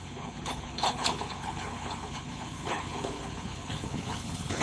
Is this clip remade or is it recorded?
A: remade